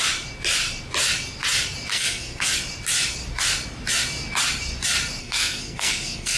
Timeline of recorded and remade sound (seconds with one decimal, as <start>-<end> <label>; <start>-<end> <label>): 0.0-1.9 recorded; 1.9-2.6 remade; 2.6-5.2 recorded; 5.2-6.4 remade